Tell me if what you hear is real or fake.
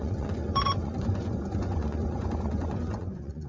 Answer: fake